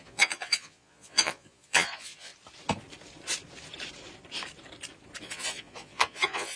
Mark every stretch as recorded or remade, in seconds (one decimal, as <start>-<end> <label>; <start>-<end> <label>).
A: 0.0-2.3 remade; 2.3-5.2 recorded; 5.2-6.6 remade